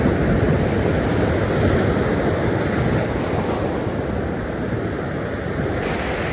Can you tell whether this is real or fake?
real